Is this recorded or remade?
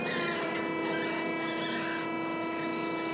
recorded